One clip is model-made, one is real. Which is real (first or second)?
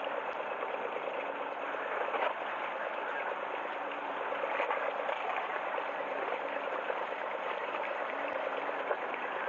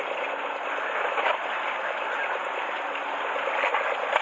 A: second